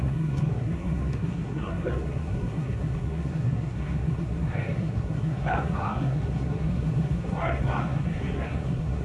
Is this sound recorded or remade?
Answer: remade